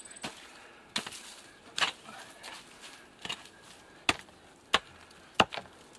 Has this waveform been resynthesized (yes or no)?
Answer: no